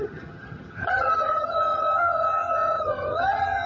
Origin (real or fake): fake